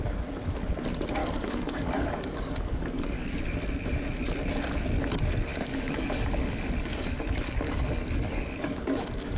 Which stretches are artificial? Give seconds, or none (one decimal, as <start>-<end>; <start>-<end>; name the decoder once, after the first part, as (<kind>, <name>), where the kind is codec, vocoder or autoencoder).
1.2-3.4 (codec, DAC); 5.5-9.4